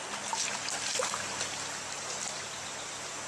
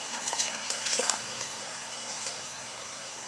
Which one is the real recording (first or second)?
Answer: first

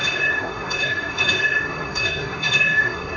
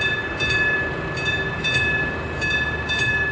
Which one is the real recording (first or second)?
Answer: second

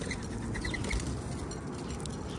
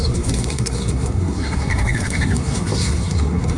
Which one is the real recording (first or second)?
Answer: first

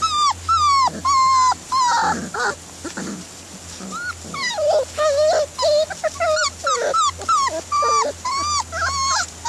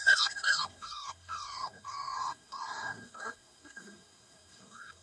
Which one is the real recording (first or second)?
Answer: first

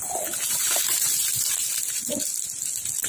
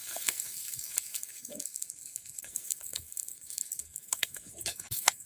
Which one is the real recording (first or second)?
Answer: first